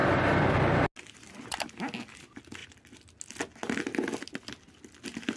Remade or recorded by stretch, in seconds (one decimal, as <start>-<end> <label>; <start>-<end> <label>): 0.0-5.4 recorded